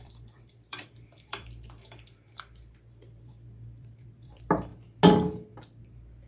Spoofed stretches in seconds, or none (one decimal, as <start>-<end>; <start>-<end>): 0.0-4.7